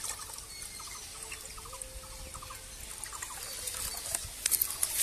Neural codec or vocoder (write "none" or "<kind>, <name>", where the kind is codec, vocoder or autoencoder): none